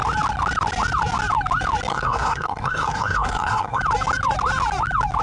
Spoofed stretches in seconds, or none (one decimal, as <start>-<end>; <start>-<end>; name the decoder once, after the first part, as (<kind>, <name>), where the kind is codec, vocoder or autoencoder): 1.9-3.8 (codec, SNAC)